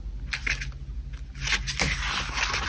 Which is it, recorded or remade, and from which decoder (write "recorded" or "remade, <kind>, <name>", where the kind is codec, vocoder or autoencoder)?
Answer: recorded